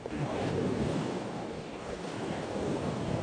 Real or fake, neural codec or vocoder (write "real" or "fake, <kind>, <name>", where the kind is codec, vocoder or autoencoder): fake, codec, DAC